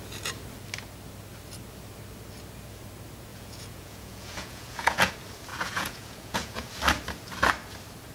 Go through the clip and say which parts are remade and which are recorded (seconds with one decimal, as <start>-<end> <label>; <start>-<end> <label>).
0.0-3.3 recorded; 3.3-5.1 remade; 5.1-5.5 recorded; 5.5-6.7 remade; 6.7-8.1 recorded